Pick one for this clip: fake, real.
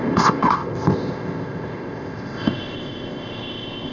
fake